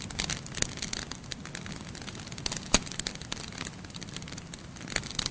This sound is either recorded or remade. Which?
recorded